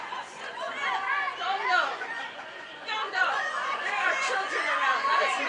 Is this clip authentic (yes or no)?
no